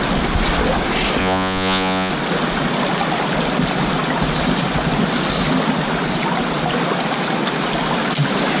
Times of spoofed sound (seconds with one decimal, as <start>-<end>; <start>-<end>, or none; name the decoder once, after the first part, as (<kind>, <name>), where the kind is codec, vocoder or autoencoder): 1.2-2.1 (vocoder, Vocos)